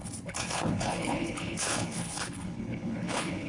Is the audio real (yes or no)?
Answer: no